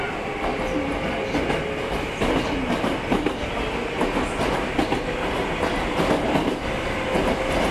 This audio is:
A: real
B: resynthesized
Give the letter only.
A